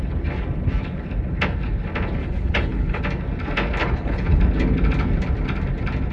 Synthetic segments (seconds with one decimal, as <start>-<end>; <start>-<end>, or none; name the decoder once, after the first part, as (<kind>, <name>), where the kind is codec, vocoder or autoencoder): 2.2-3.0 (codec, HILCodec); 3.8-4.4